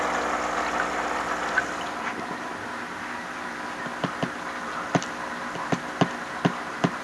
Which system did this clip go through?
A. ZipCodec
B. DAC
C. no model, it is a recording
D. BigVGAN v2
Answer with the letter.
C